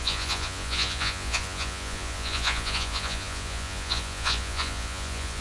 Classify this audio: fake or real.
fake